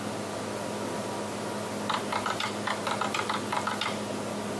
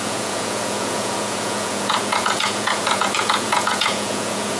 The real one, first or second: first